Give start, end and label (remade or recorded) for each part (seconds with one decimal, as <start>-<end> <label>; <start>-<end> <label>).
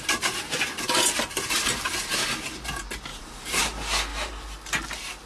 0.0-3.1 recorded; 3.1-3.6 remade; 3.6-4.1 recorded; 4.1-4.7 remade; 4.7-5.3 recorded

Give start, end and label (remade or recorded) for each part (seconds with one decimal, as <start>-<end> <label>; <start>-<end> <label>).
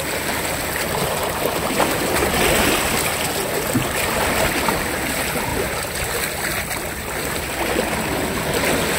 0.0-5.5 recorded; 5.5-7.8 remade; 7.8-9.0 recorded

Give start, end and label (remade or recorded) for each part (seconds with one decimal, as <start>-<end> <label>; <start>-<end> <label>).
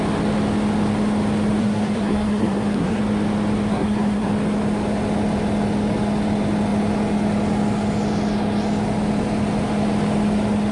0.0-1.6 recorded; 1.6-3.0 remade; 3.0-3.7 recorded; 3.7-4.3 remade; 4.3-10.7 recorded